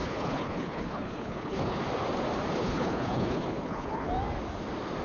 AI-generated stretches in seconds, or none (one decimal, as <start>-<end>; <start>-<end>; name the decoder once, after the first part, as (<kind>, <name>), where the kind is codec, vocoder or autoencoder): 0.0-1.8 (codec, HILCodec); 2.6-4.1